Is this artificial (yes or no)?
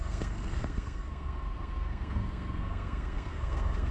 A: yes